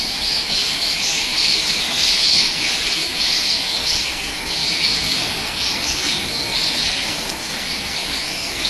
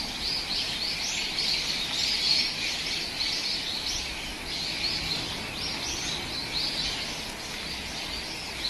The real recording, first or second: second